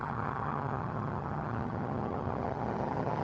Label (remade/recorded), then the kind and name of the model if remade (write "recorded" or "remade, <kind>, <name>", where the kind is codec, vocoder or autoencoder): remade, vocoder, HiFi-GAN